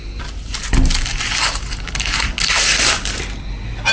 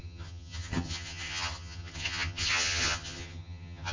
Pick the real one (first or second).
first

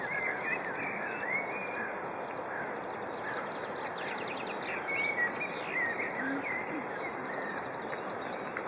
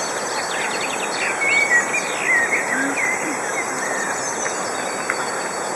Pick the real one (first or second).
second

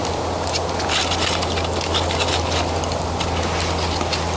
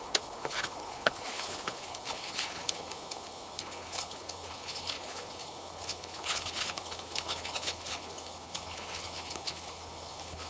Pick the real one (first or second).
first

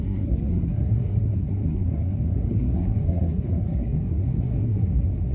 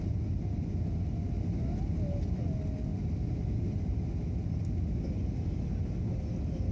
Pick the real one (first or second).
second